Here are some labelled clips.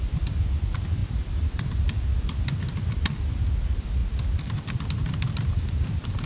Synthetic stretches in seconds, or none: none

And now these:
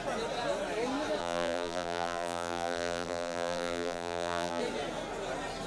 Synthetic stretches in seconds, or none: 1.2-4.6 (vocoder, BigVGAN v2)

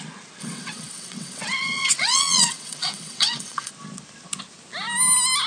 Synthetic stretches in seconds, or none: 0.4-3.7 (vocoder, WaveNeXt)

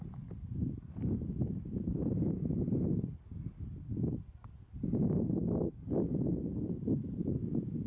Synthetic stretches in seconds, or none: none

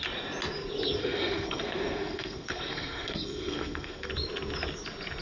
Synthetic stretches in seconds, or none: 1.0-4.1 (codec, SNAC)

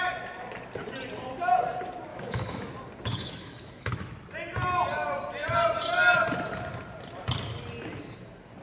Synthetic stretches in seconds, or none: 2.1-2.7 (autoencoder, DAC-VAE); 3.1-4.1

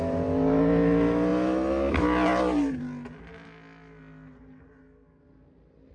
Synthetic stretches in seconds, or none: none

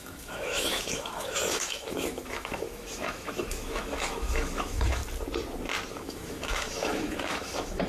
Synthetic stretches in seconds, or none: 0.0-5.0 (autoencoder, DAC-VAE); 5.9-7.9